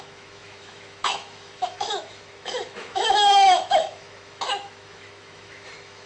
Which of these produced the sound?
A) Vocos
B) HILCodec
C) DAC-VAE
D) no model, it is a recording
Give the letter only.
C